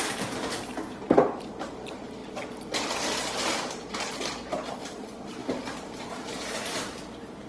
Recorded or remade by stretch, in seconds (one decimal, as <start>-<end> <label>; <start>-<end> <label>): 0.0-2.2 remade; 2.2-3.2 recorded; 3.2-5.4 remade; 5.4-6.0 recorded; 6.0-7.5 remade